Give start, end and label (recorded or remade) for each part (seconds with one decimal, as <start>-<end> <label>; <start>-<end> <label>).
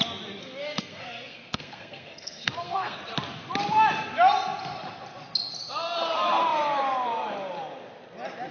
0.0-0.4 recorded; 0.4-3.0 remade; 3.0-8.5 recorded